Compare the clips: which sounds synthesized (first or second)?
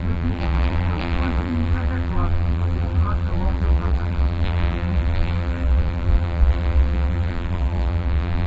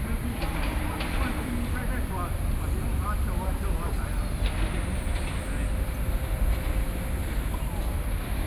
first